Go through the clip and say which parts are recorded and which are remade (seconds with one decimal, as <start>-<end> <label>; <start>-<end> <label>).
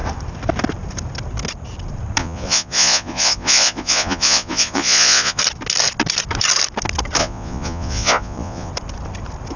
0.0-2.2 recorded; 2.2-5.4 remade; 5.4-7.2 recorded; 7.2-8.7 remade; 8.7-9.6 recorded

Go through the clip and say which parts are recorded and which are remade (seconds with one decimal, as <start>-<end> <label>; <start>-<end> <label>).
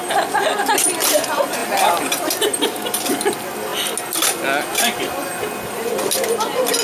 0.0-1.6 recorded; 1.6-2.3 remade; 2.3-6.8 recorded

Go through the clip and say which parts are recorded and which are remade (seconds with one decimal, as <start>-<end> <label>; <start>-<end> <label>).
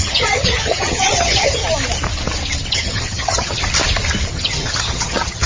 0.0-1.6 remade; 1.6-2.7 recorded; 2.7-3.6 remade; 3.6-4.3 recorded; 4.3-5.5 remade